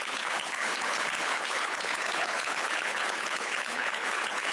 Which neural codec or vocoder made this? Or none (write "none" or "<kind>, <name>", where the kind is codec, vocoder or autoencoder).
codec, HILCodec